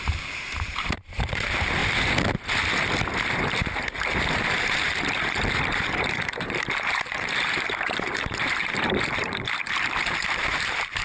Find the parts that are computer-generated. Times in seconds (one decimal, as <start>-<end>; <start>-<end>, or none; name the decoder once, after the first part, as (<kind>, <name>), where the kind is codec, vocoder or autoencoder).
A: 0.0-1.8 (vocoder, BigVGAN v2); 3.3-11.0

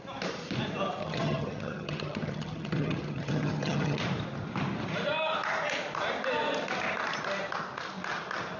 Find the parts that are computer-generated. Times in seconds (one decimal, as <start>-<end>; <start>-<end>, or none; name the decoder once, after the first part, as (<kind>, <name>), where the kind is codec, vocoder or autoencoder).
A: 1.0-4.0 (vocoder, HiFi-GAN)

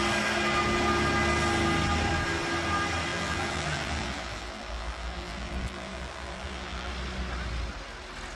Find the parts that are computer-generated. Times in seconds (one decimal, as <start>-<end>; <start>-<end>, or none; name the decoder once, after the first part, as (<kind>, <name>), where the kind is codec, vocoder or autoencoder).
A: 3.1-6.9 (vocoder, BigVGAN v2)

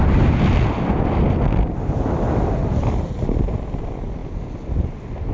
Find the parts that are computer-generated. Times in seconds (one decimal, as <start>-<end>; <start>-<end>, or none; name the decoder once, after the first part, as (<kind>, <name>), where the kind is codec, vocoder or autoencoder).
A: none

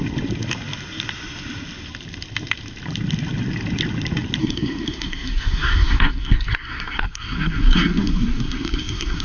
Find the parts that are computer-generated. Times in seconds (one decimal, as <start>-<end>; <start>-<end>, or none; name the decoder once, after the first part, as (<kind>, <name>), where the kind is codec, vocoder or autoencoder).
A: 4.4-9.2 (codec, SNAC)